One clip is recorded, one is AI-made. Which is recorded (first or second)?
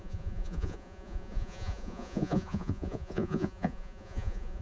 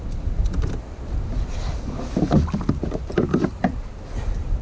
second